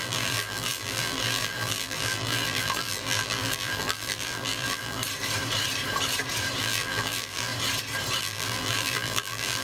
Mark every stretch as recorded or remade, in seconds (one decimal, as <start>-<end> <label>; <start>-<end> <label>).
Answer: 0.0-5.0 remade; 5.0-6.6 recorded; 6.6-7.5 remade; 7.5-8.2 recorded; 8.2-9.6 remade